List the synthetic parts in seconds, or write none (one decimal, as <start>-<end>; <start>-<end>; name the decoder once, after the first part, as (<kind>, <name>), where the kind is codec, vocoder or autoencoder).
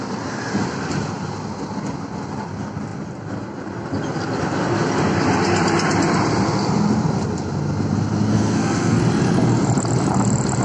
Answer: 8.3-9.0 (codec, SNAC)